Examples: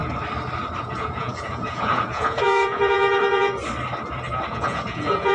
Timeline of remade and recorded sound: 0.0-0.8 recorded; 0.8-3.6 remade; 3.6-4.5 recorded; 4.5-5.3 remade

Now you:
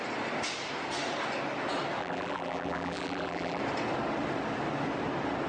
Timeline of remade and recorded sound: 0.0-2.0 recorded; 2.0-3.6 remade; 3.6-5.5 recorded

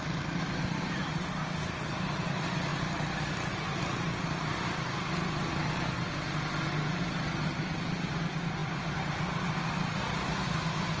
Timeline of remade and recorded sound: 0.0-11.0 recorded